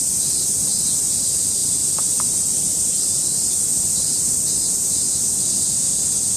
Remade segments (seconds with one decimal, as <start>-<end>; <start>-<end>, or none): 1.6-5.4